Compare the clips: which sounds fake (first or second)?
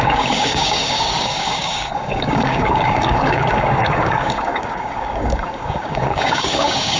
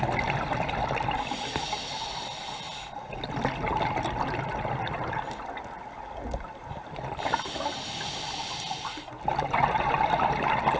first